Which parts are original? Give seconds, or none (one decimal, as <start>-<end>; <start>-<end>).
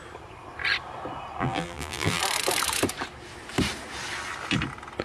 0.0-1.4; 2.2-5.0